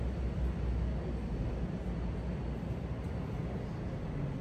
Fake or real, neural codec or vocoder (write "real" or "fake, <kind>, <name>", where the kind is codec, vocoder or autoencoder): real